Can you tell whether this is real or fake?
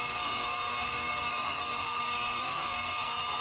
fake